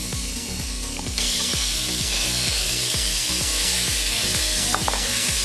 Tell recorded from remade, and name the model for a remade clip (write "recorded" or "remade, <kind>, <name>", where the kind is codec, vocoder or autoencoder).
remade, codec, SNAC